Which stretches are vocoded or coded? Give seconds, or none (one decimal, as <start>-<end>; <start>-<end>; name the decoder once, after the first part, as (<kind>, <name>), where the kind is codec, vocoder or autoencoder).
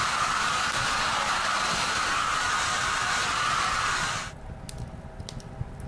0.0-2.4 (vocoder, BigVGAN v2)